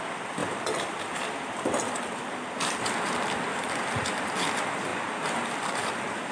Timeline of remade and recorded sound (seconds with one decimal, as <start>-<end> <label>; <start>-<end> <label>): 0.0-0.4 recorded; 0.4-3.1 remade; 3.1-4.9 recorded; 4.9-5.7 remade; 5.7-6.3 recorded